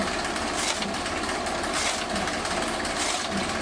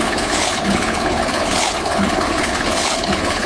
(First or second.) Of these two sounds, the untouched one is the first